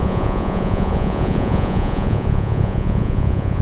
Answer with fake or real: fake